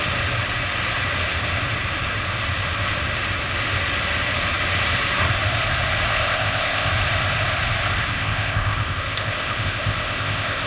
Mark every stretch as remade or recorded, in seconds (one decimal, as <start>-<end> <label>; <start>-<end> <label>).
0.0-6.1 recorded; 6.1-6.9 remade; 6.9-8.1 recorded; 8.1-10.7 remade